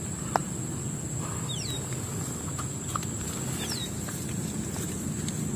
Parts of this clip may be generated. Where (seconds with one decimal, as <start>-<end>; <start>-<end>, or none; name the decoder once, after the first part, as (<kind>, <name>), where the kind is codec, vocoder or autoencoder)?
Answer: none